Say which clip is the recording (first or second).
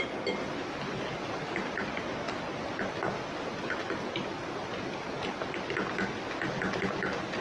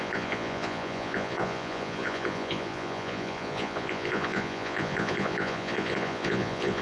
first